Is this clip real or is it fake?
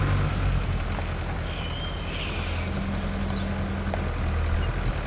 real